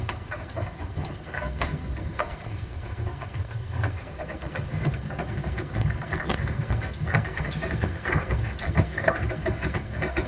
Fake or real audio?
fake